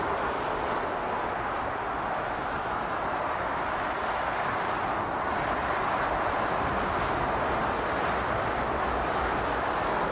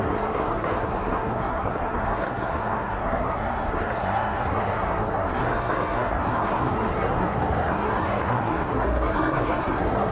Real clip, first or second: first